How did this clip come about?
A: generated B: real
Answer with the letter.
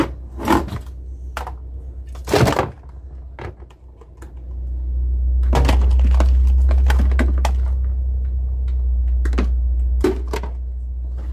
B